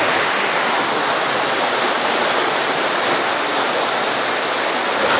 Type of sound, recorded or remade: recorded